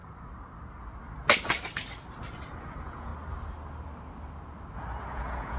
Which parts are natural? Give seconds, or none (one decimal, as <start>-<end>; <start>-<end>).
0.0-2.6; 3.1-5.1